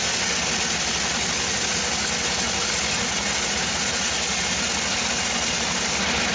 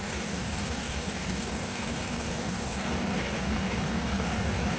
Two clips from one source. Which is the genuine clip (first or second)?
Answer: first